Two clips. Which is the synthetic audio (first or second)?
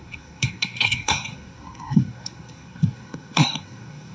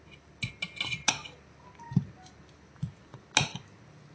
first